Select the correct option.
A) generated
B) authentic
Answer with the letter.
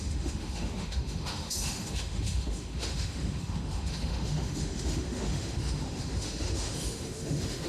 A